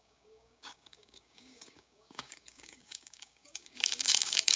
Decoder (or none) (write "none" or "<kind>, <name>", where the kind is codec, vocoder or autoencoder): codec, DAC